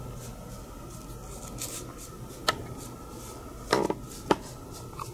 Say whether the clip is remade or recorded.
recorded